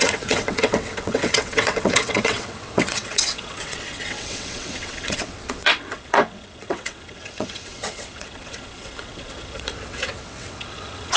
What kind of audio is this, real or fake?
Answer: fake